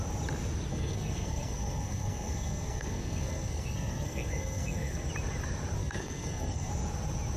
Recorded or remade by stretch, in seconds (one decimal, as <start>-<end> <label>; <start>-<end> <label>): 0.0-0.7 recorded; 0.7-5.1 remade; 5.1-5.8 recorded; 5.8-6.7 remade; 6.7-7.4 recorded